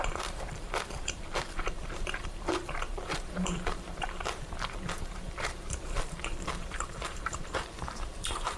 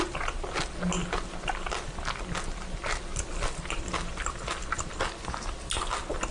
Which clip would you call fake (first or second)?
first